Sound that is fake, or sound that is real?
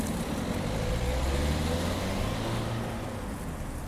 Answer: real